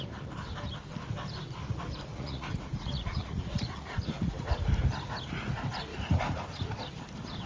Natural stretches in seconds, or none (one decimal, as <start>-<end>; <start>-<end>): 0.0-2.1; 4.1-5.9; 6.7-7.5